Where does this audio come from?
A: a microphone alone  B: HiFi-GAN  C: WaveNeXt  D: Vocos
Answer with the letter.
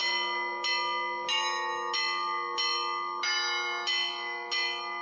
A